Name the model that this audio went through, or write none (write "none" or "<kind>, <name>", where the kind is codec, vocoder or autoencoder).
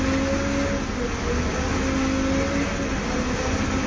none